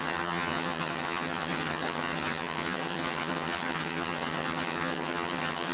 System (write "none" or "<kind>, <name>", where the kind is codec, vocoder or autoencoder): vocoder, HiFi-GAN